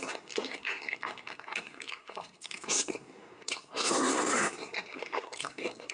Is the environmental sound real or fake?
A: fake